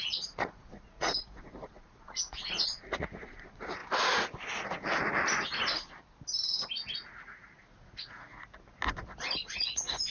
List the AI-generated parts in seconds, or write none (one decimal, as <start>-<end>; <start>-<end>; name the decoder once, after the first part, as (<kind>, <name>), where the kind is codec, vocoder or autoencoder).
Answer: 0.0-3.8 (vocoder, Vocos); 7.1-8.3; 9.4-10.1

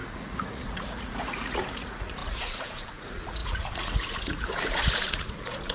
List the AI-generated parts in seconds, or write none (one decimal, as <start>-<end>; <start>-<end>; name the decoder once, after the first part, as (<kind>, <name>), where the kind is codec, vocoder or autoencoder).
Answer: 0.0-5.7 (vocoder, Vocos)

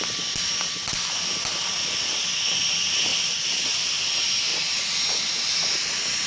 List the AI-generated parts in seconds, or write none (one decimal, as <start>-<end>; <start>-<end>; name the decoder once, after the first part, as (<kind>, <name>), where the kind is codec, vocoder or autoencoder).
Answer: none

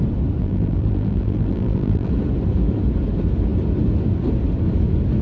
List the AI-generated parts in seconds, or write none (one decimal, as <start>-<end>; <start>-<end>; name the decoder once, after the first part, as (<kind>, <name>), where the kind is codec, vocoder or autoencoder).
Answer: 0.4-2.1 (vocoder, BigVGAN v2)

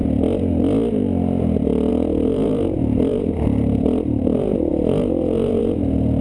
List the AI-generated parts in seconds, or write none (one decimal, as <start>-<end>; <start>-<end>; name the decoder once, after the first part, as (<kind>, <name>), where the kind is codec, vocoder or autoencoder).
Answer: 1.9-6.2 (vocoder, BigVGAN v2)